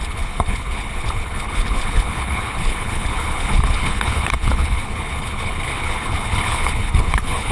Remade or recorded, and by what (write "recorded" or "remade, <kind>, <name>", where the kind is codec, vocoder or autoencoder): remade, codec, HILCodec